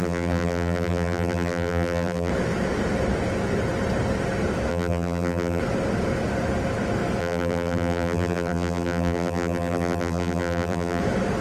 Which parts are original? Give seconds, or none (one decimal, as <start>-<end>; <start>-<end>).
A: 2.3-4.7; 5.6-7.2; 11.0-11.4